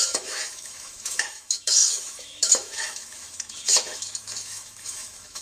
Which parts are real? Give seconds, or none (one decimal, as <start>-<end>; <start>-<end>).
none